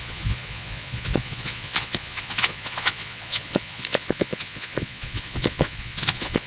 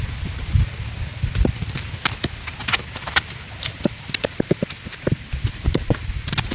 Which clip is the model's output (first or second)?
first